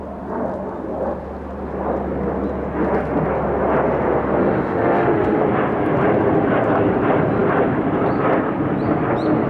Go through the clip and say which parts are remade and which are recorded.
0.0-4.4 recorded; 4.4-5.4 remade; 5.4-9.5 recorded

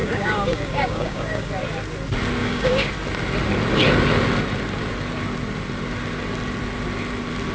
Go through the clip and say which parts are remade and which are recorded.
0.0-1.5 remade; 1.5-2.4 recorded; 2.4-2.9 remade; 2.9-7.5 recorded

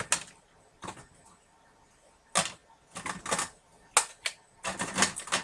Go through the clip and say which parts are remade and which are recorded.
0.0-5.4 recorded